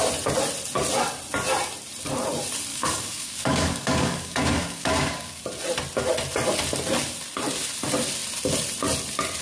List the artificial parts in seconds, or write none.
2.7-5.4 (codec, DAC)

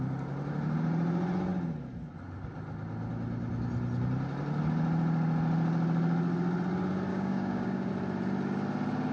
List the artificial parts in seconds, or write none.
7.1-7.9 (codec, DAC)

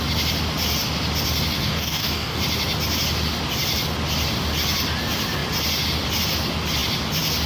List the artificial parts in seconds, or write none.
1.6-2.4 (codec, DAC)

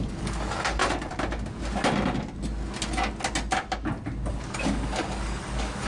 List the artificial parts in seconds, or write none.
0.0-0.8 (codec, DAC); 4.3-5.9